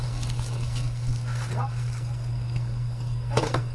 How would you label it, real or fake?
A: fake